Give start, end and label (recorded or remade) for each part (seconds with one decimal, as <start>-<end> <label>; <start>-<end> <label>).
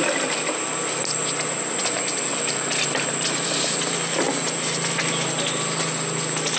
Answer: 0.0-6.6 recorded